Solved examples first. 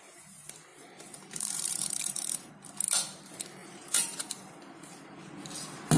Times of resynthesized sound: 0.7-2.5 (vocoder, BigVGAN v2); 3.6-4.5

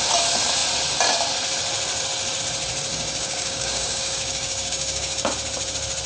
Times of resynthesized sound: 2.9-5.3 (codec, DAC)

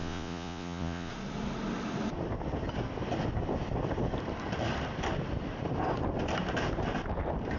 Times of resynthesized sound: 0.0-1.1 (vocoder, Vocos)